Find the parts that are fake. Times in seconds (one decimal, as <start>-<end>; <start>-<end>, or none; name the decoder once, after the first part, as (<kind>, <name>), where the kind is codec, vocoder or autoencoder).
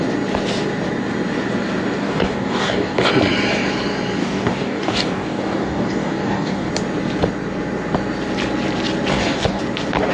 2.0-3.1 (codec, DAC); 4.2-6.7; 9.1-9.6